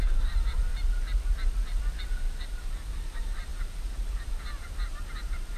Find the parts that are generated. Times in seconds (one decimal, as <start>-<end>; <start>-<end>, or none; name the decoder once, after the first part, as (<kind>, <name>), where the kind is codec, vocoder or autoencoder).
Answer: 0.0-0.7 (vocoder, BigVGAN v2); 2.1-5.6